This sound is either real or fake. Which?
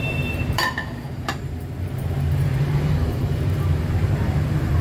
fake